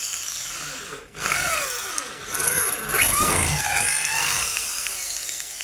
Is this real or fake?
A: fake